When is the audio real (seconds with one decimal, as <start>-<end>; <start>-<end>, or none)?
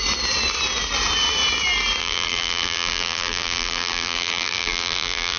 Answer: 0.0-2.0